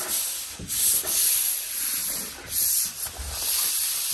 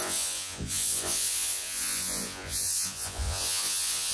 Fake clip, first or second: second